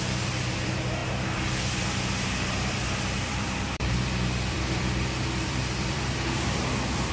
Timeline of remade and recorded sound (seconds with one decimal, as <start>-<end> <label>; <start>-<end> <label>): 0.0-1.0 remade; 1.0-3.2 recorded; 3.2-7.1 remade